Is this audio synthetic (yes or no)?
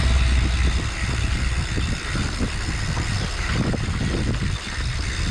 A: no